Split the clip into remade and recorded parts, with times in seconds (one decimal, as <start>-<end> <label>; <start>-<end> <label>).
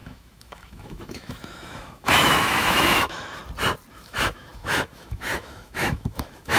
0.0-3.4 remade; 3.4-3.9 recorded; 3.9-6.6 remade